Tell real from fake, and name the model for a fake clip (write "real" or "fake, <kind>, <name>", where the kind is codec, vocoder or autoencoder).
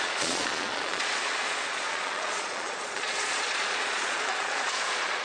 fake, vocoder, Vocos